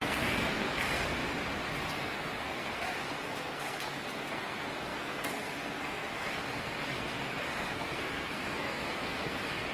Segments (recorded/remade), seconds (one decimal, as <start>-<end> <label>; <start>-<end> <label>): 0.0-1.2 remade; 1.2-1.9 recorded; 1.9-9.7 remade

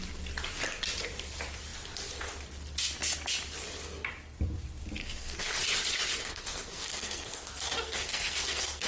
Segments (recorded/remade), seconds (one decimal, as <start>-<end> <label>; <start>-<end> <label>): 0.0-5.0 recorded; 5.0-5.6 remade; 5.6-6.1 recorded; 6.1-8.9 remade

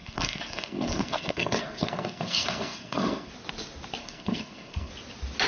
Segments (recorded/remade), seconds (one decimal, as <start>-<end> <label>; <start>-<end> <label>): 0.0-3.3 remade; 3.3-4.0 recorded; 4.0-4.9 remade; 4.9-5.5 recorded

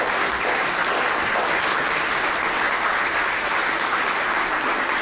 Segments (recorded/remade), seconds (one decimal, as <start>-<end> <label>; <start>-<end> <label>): 0.0-5.0 recorded

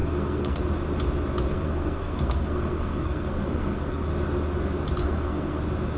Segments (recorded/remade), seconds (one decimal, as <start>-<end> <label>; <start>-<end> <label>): 0.0-0.6 remade; 0.6-1.5 recorded; 1.5-4.1 remade; 4.1-5.0 recorded; 5.0-5.6 remade; 5.6-6.0 recorded